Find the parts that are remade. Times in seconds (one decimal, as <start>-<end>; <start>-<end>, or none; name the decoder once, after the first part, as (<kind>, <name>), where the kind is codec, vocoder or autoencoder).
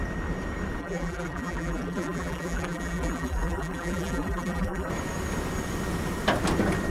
0.8-4.9 (vocoder, BigVGAN v2)